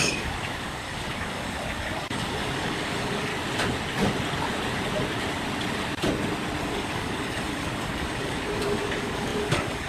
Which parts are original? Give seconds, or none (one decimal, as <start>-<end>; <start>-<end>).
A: 3.3-6.6